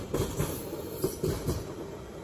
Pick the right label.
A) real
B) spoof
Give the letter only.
B